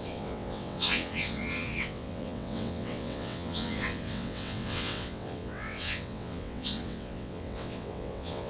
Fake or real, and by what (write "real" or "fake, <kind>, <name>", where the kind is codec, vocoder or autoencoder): fake, vocoder, WaveNeXt